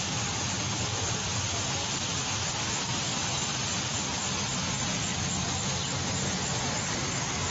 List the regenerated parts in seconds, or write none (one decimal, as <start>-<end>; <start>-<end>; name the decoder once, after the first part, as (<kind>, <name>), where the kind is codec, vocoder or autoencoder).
0.0-1.4 (vocoder, BigVGAN v2); 3.1-4.2